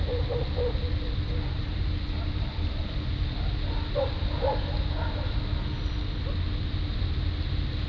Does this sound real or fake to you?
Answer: real